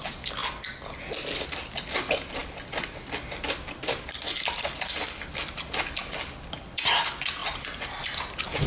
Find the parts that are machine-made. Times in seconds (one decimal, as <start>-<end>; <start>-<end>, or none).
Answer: none